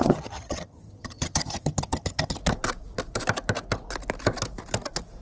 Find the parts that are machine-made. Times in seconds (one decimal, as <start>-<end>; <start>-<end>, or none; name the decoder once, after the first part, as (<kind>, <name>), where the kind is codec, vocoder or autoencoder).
0.0-2.4 (vocoder, HiFi-GAN)